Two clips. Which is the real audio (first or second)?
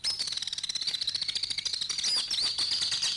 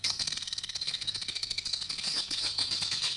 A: first